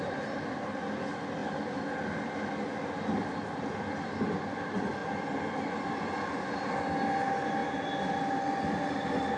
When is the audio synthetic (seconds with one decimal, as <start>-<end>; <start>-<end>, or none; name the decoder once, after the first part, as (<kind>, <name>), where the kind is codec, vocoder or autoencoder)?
none